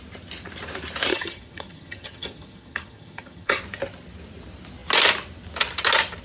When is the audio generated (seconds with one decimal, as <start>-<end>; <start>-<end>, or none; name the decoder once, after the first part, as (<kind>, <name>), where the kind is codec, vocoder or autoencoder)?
1.1-3.6 (vocoder, HiFi-GAN)